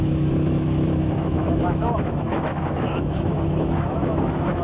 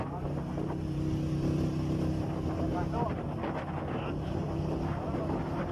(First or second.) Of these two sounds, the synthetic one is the first